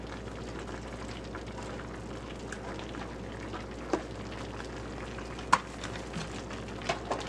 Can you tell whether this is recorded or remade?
recorded